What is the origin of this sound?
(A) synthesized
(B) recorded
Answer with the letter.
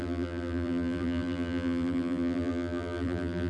A